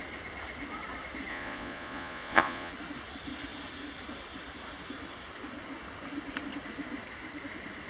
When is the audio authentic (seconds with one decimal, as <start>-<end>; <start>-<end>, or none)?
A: 0.0-1.3; 2.7-7.9